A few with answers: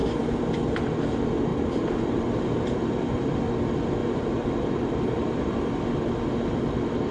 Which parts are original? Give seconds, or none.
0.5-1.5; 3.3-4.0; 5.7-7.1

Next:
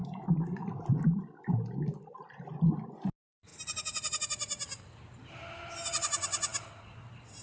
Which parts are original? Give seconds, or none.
0.0-7.4

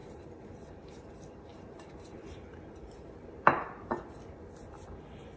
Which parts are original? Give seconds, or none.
1.1-1.5; 3.8-5.4

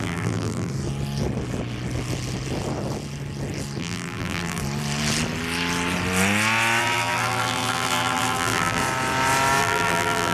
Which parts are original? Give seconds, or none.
0.7-3.8; 4.6-6.8; 8.8-9.6